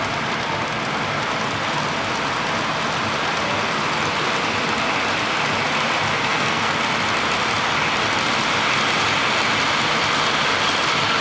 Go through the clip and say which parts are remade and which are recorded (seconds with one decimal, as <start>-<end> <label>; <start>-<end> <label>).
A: 0.0-6.1 recorded; 6.1-6.8 remade; 6.8-11.2 recorded